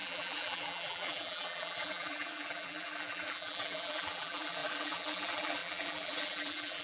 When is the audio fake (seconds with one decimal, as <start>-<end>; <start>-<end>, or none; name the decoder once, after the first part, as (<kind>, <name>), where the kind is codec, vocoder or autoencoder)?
0.0-6.8 (vocoder, BigVGAN v2)